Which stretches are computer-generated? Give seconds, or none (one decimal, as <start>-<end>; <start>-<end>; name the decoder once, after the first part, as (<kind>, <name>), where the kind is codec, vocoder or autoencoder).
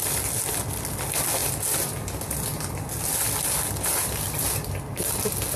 none